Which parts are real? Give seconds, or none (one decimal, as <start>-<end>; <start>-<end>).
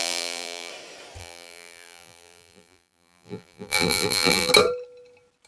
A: 0.7-1.2; 4.5-5.5